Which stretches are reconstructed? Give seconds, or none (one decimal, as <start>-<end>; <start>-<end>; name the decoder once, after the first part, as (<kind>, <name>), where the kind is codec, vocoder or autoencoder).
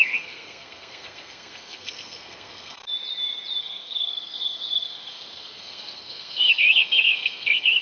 0.0-2.8 (codec, SNAC); 3.6-7.8